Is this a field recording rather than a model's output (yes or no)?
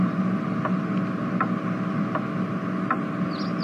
yes